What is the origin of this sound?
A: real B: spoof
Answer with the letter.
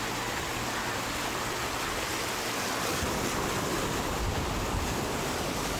A